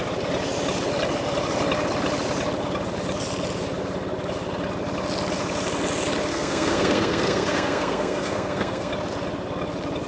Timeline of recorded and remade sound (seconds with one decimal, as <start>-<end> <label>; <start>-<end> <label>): 0.0-6.3 recorded; 6.3-8.9 remade; 8.9-10.1 recorded